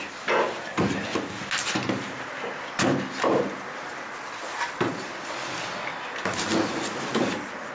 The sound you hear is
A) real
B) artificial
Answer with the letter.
A